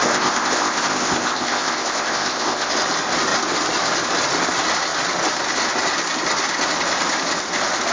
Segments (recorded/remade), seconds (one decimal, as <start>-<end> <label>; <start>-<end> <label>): 0.0-2.7 remade; 2.7-7.9 recorded